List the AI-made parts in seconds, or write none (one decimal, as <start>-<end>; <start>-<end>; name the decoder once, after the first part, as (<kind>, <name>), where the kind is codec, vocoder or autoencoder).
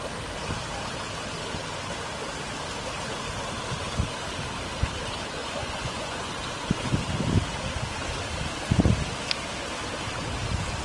5.4-6.3 (vocoder, Vocos)